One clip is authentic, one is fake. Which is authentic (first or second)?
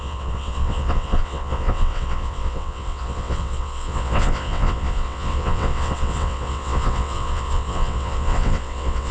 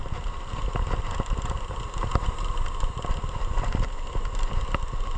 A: second